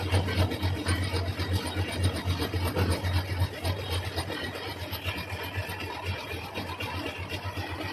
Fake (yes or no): no